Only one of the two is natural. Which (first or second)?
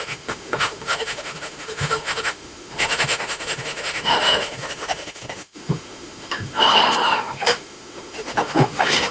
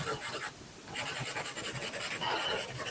second